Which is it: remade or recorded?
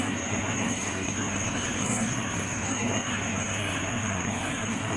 remade